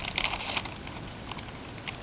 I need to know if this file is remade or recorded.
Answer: recorded